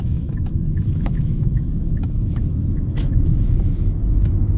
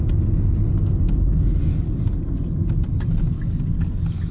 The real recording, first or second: second